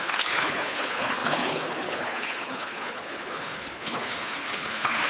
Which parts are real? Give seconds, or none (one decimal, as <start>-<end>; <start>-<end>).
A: none

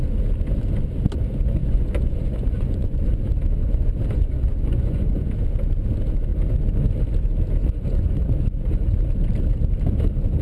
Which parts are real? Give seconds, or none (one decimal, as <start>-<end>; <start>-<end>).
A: 0.0-1.6; 3.0-3.6; 5.3-7.6; 8.3-10.4

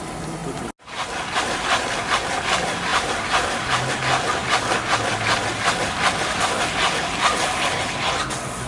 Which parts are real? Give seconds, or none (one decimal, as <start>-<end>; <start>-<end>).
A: 0.0-2.9; 3.9-8.7

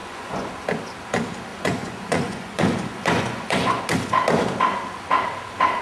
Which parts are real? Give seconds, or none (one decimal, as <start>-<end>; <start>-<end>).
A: 0.5-1.5; 3.8-5.8

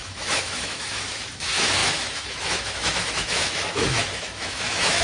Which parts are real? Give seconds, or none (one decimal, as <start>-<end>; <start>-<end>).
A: none

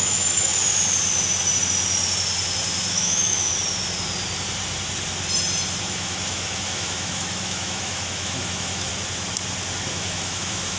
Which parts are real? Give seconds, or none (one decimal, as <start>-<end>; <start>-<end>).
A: 0.5-2.9; 3.5-5.8; 8.9-9.9

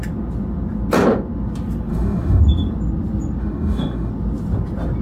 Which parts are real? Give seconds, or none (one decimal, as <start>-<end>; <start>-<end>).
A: 0.0-1.9; 2.4-3.4; 4.1-5.0

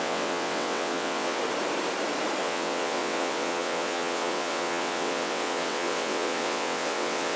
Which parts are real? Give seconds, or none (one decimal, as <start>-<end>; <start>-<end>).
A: 1.4-2.4